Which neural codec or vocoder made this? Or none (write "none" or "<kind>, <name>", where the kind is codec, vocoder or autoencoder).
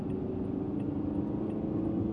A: none